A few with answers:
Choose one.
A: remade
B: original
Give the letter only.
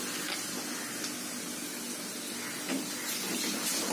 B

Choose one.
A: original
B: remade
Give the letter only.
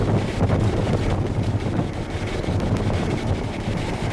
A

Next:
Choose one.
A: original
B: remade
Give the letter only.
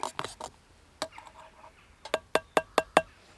A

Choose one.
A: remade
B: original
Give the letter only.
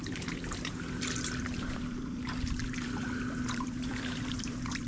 A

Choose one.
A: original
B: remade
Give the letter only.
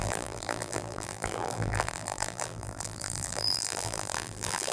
B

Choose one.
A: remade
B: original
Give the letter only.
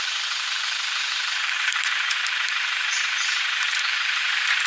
A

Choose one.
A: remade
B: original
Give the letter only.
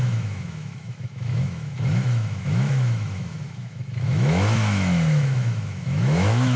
A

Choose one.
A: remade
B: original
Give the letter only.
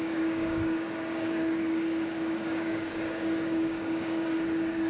A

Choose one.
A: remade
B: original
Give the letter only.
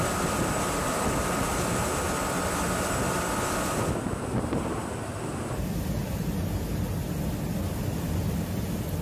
B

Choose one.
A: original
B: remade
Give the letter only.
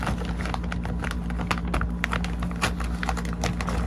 A